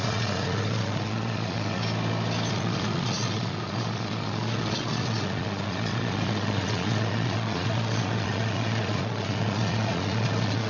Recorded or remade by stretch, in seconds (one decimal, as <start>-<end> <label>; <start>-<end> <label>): 0.0-1.8 remade; 1.8-2.5 recorded; 2.5-10.7 remade